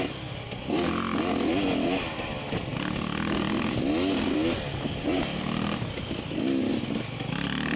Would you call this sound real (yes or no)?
yes